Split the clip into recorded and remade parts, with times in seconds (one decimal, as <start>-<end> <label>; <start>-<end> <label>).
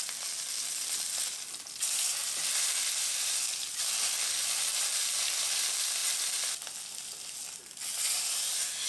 0.0-8.9 recorded